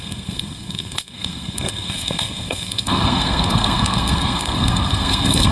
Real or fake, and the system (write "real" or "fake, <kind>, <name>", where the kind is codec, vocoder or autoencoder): fake, codec, SNAC